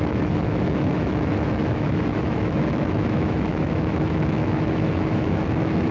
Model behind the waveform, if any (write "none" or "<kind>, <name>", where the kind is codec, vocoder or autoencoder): autoencoder, DAC-VAE